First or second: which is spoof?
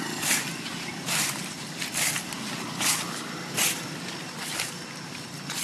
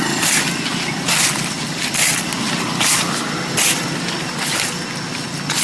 first